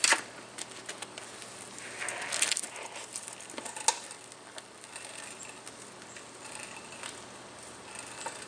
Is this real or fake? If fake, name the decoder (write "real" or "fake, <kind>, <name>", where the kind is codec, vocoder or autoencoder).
real